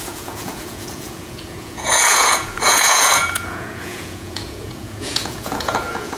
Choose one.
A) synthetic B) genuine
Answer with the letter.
A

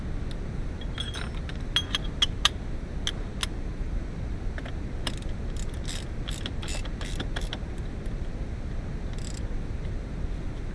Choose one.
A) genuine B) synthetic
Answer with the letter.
A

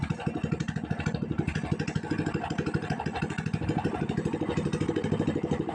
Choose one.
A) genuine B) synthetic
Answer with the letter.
A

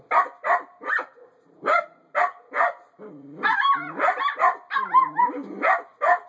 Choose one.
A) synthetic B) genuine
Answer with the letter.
B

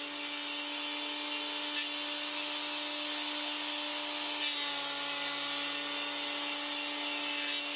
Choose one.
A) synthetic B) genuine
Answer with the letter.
B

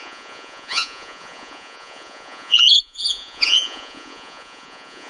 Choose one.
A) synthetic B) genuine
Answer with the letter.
A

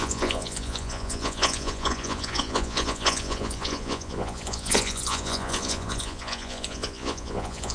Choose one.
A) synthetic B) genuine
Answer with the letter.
A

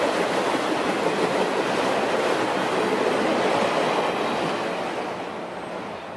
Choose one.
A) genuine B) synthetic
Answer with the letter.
A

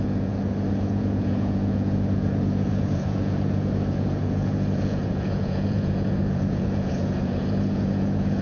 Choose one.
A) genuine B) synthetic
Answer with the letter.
B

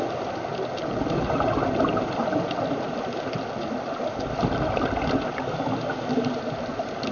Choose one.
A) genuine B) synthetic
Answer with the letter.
A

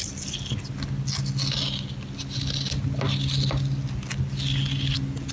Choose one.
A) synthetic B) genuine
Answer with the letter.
B